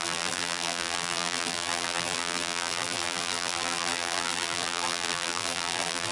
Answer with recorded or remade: remade